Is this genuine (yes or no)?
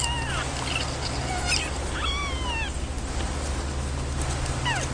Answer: yes